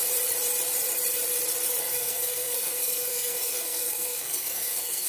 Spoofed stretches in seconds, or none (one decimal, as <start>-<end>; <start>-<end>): 1.8-5.1